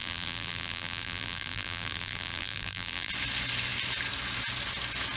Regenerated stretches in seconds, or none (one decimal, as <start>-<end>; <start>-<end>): 0.0-3.1